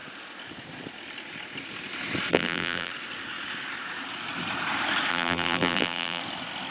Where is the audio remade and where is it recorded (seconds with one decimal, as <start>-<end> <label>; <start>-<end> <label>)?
0.0-2.3 recorded; 2.3-2.9 remade; 2.9-5.1 recorded; 5.1-6.2 remade; 6.2-6.7 recorded